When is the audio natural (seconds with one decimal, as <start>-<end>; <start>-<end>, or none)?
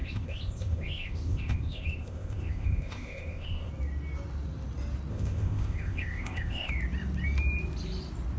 3.7-5.1; 6.7-8.4